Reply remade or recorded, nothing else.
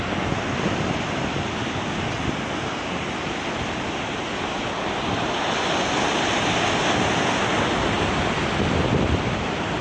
recorded